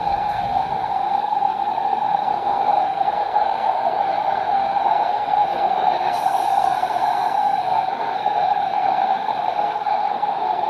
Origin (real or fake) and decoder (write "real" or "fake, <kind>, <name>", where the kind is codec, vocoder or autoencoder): fake, codec, SNAC